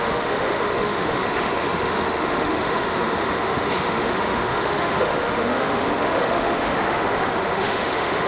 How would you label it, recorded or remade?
remade